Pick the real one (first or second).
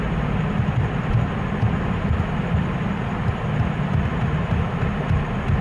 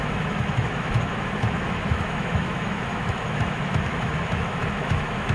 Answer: first